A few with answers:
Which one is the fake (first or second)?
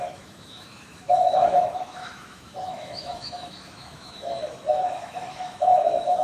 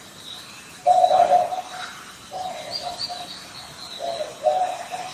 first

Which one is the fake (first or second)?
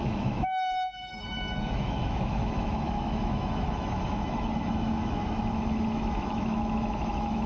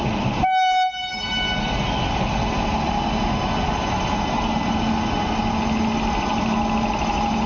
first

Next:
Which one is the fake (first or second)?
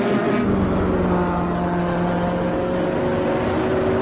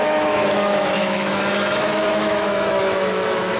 second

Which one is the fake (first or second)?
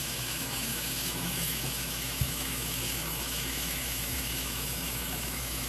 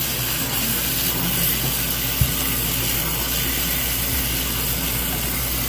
first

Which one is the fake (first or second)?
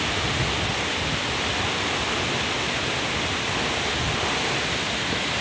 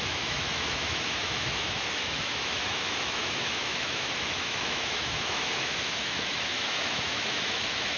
second